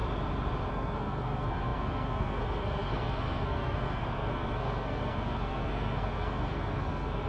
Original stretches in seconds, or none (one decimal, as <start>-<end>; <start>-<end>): 0.0-0.7